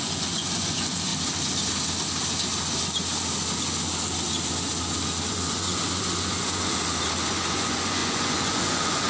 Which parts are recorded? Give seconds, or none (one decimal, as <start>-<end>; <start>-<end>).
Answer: 1.1-5.3; 6.7-7.3

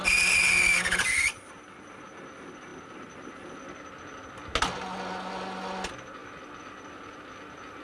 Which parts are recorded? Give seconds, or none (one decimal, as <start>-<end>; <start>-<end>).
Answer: 0.0-7.8